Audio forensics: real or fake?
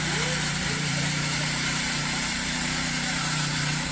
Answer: fake